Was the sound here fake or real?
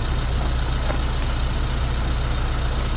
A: real